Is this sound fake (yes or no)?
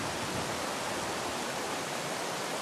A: no